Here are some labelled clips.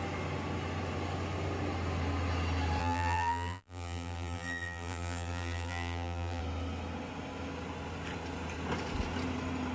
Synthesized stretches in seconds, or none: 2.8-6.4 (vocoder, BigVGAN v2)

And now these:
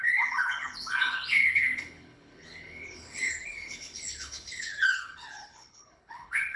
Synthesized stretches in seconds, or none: 0.0-6.6 (codec, HILCodec)

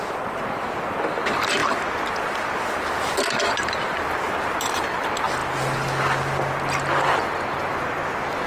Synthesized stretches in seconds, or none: none